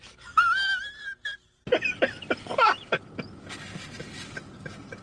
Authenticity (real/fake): real